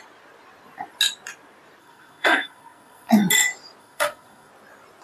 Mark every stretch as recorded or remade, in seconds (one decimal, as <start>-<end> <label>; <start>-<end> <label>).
0.0-1.8 recorded; 1.8-3.1 remade; 3.1-3.8 recorded; 3.8-4.5 remade; 4.5-5.0 recorded